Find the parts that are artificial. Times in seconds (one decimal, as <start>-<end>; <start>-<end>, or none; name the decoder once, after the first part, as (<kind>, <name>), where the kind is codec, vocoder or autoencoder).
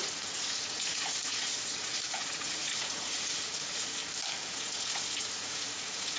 0.0-4.0 (vocoder, Vocos); 4.5-6.2